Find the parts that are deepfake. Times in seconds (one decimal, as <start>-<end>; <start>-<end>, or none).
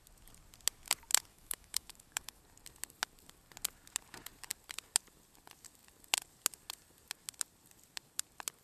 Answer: 1.3-2.4